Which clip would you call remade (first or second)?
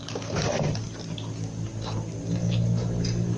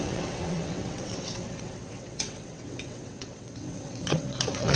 second